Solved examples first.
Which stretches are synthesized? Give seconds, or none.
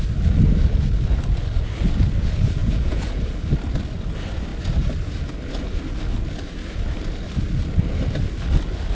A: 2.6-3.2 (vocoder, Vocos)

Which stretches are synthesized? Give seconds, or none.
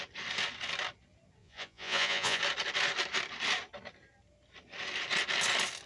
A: 1.4-2.4 (vocoder, Vocos)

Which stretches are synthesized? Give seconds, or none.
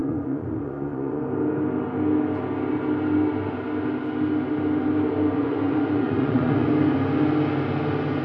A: 0.0-1.2 (vocoder, Vocos); 5.4-6.7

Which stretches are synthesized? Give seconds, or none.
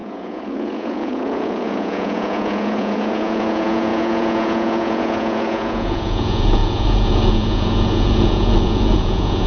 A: 0.0-9.5 (vocoder, Vocos)